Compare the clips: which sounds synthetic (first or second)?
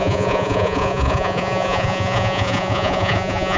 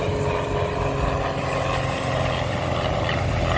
first